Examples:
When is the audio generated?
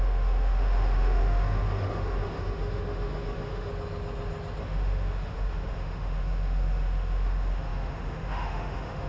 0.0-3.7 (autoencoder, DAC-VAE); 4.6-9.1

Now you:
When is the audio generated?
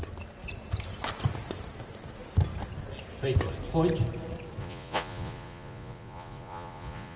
4.6-7.2 (vocoder, Vocos)